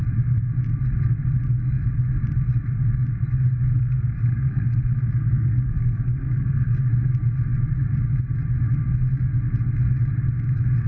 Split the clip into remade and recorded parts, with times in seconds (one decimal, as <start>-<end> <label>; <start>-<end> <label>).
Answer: 0.0-3.8 recorded; 3.8-6.9 remade; 6.9-10.9 recorded